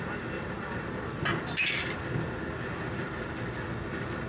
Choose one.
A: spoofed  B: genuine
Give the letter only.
B